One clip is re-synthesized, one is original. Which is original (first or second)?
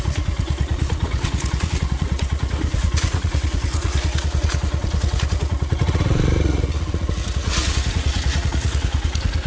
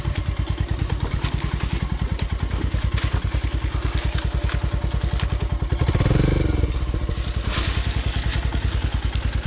second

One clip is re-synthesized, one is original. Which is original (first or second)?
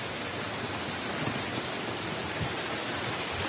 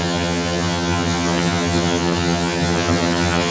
first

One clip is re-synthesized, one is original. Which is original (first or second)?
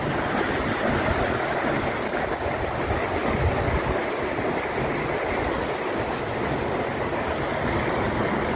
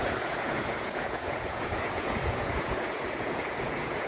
first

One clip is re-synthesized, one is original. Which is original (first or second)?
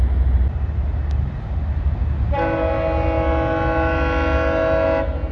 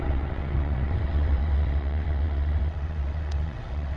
first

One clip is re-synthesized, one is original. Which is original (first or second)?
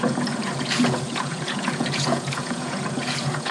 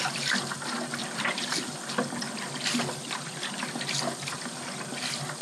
second